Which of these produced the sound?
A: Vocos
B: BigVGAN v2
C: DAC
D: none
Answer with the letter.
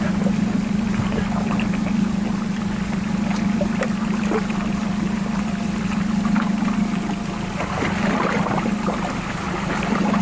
D